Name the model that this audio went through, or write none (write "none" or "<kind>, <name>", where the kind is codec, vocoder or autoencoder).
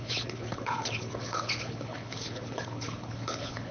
codec, HILCodec